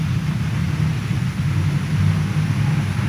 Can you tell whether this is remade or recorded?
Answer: recorded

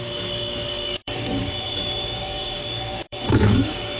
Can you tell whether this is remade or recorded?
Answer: remade